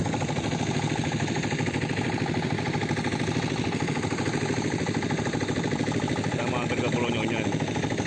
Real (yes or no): yes